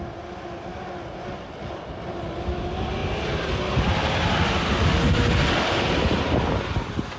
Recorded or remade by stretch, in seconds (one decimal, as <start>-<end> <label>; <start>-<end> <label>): 0.0-7.2 recorded